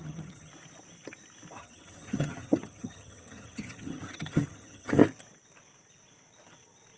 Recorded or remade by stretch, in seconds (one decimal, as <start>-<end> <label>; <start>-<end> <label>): 0.0-0.5 remade; 0.5-1.6 recorded; 1.6-5.0 remade; 5.0-7.0 recorded

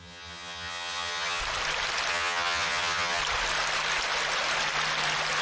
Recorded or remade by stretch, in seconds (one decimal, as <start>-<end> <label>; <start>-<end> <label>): 0.0-1.4 remade; 1.4-2.1 recorded; 2.1-3.2 remade; 3.2-5.4 recorded

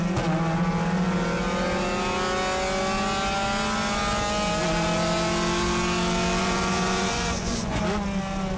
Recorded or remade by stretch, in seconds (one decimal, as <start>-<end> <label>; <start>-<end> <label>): 0.0-6.4 recorded; 6.4-7.8 remade; 7.8-8.6 recorded

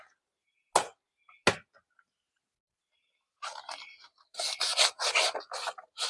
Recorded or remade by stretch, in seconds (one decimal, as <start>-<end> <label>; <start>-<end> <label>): 0.0-6.1 recorded

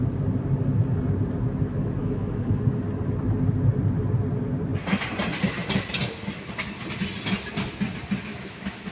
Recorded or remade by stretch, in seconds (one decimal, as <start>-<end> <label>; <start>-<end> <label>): 0.0-2.0 recorded; 2.0-2.6 remade; 2.6-8.3 recorded; 8.3-8.9 remade

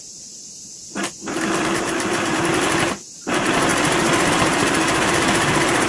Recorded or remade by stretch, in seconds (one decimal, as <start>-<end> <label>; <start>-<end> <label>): 0.0-5.9 recorded

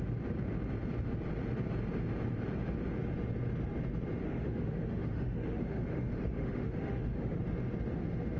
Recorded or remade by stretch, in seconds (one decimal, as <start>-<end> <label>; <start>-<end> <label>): 0.0-4.2 recorded; 4.2-7.4 remade; 7.4-8.4 recorded

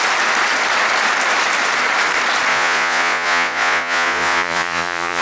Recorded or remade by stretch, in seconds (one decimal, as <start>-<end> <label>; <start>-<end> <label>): 0.0-2.5 recorded; 2.5-5.2 remade